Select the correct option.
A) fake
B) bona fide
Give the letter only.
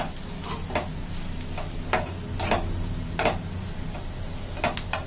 B